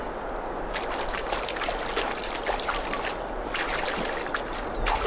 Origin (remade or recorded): recorded